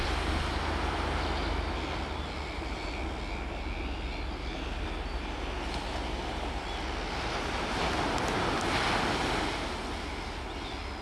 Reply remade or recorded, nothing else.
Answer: recorded